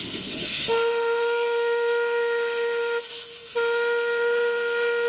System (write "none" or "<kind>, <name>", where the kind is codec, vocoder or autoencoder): autoencoder, DAC-VAE